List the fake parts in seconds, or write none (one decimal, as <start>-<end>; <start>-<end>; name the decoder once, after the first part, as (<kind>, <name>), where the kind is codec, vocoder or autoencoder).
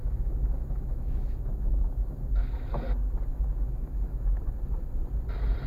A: 0.0-2.7 (autoencoder, DAC-VAE); 3.3-4.4